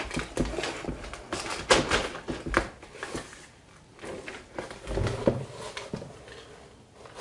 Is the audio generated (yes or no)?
no